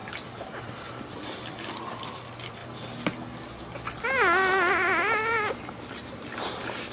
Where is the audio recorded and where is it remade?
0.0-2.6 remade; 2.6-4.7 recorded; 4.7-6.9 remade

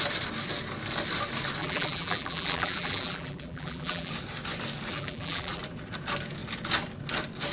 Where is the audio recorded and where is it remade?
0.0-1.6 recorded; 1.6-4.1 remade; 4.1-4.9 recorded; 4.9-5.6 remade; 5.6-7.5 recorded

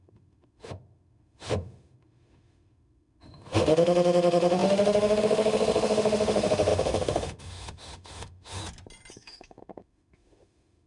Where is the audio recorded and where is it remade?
0.0-8.6 remade; 8.6-9.1 recorded; 9.1-10.9 remade

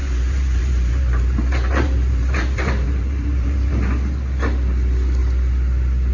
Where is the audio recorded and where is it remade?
0.0-3.7 remade; 3.7-6.1 recorded

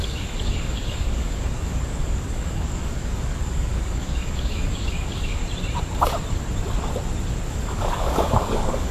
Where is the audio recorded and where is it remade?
0.0-5.4 remade; 5.4-7.5 recorded; 7.5-8.9 remade

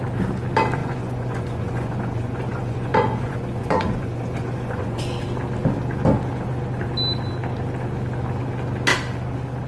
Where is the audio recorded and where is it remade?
0.0-0.8 recorded; 0.8-5.0 remade; 5.0-9.7 recorded